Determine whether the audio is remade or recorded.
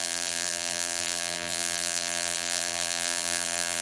remade